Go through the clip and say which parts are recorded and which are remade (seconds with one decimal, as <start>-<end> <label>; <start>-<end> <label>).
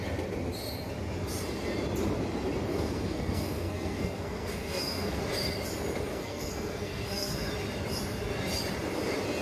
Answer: 0.0-2.7 recorded; 2.7-5.2 remade; 5.2-6.1 recorded; 6.1-7.5 remade; 7.5-9.4 recorded